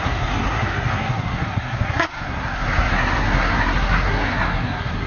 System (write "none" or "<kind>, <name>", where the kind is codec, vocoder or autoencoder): codec, SNAC